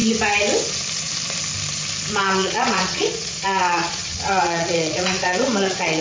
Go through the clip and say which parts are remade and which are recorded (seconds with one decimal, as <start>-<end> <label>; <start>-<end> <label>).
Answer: 0.0-2.2 recorded; 2.2-6.0 remade